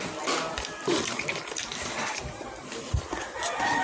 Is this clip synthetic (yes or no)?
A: yes